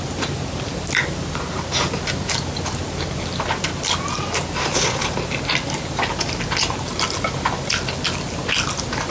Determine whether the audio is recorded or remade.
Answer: recorded